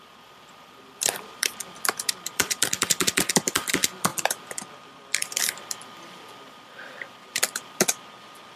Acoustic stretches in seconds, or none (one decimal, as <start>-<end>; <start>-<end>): none